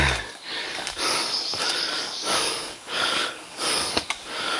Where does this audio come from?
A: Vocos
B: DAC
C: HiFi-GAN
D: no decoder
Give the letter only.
B